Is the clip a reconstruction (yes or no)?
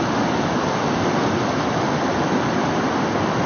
no